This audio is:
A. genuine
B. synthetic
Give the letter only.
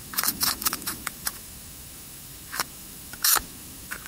B